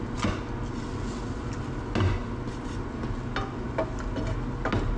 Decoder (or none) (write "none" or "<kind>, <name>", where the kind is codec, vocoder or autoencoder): none